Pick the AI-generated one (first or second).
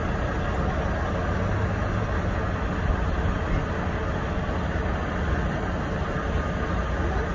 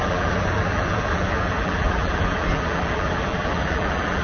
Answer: second